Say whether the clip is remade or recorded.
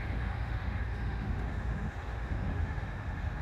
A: remade